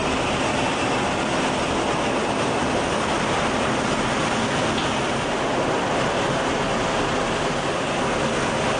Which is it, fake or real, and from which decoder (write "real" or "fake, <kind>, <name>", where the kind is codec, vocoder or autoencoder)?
real